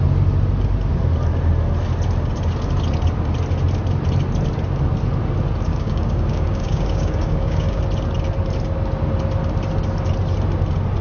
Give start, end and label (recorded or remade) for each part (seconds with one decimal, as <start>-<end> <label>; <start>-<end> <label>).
0.0-5.7 recorded; 5.7-7.8 remade; 7.8-11.0 recorded